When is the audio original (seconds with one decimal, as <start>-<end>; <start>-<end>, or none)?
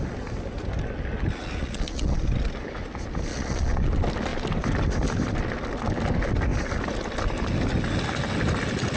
0.0-1.6; 2.2-3.3; 3.9-9.0